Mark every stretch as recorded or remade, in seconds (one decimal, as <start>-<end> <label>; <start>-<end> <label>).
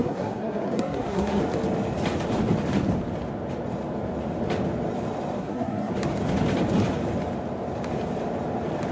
0.0-1.4 remade; 1.4-5.4 recorded; 5.4-5.9 remade; 5.9-8.9 recorded